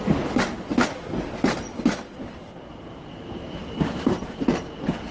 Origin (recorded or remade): recorded